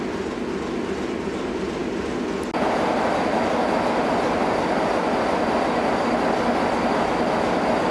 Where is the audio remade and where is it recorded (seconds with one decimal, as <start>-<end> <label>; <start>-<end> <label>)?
0.0-7.9 recorded